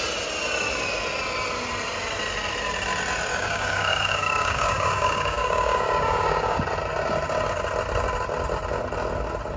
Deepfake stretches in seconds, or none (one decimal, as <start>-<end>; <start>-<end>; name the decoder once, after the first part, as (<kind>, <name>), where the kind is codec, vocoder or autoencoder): 3.3-6.6 (codec, DAC)